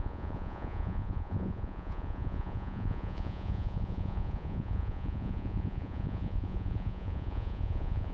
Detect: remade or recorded remade